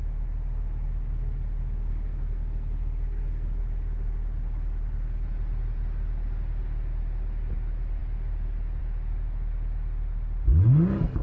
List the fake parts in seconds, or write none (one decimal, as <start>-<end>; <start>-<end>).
1.9-3.6